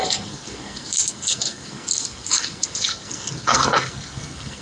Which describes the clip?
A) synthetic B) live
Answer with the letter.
A